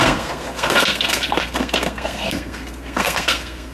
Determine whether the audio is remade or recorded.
remade